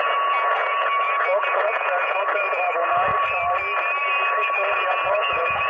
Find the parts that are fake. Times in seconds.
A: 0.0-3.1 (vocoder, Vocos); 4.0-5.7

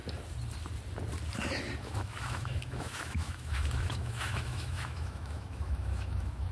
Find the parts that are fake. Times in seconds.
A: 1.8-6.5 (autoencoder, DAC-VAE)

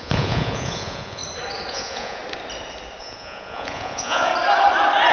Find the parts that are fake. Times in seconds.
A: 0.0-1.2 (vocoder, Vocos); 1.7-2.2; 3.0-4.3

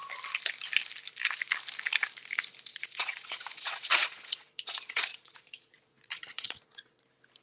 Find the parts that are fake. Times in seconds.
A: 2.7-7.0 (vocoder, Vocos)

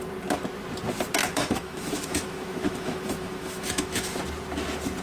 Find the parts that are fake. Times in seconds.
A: 1.2-4.2 (autoencoder, DAC-VAE)

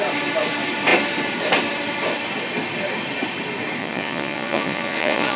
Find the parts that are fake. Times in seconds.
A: 3.8-5.4 (vocoder, Vocos)

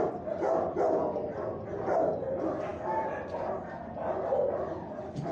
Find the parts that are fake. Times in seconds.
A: none

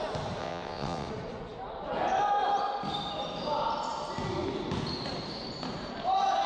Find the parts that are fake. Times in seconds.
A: 0.4-1.1 (vocoder, WaveNeXt)